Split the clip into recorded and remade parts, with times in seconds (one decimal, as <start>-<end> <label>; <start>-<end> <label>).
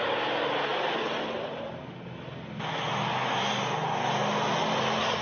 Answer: 0.0-5.2 recorded